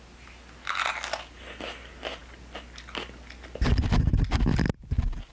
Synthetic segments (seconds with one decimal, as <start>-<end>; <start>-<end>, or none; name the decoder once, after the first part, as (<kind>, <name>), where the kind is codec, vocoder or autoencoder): none